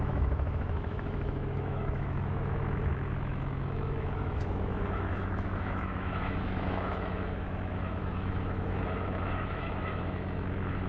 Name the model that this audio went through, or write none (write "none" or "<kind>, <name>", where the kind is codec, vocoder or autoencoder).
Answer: autoencoder, DAC-VAE